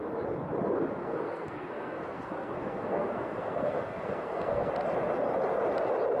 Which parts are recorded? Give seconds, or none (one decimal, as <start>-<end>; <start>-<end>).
0.0-1.0; 4.7-6.2